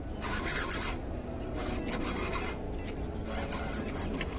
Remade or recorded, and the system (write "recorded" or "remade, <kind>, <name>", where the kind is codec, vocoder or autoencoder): recorded